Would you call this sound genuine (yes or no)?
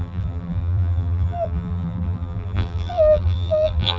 no